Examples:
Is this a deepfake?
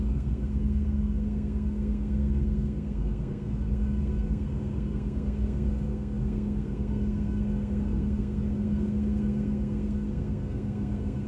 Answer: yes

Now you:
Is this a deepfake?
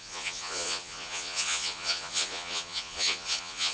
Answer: yes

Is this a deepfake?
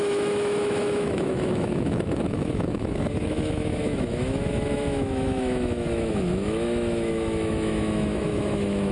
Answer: yes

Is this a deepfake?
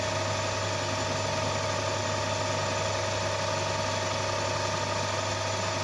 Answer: no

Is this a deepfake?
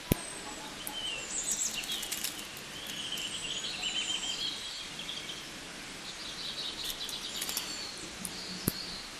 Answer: no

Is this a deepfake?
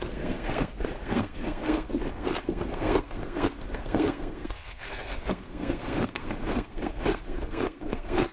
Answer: yes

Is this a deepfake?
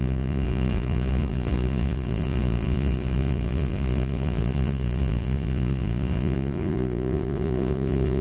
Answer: yes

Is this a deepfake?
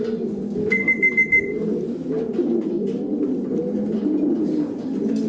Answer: no